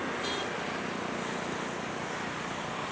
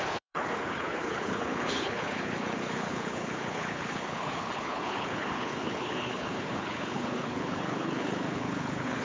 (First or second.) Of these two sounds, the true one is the first